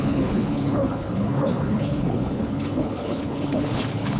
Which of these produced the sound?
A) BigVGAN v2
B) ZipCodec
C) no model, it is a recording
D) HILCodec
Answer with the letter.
D